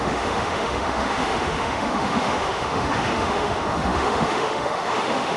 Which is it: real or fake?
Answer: fake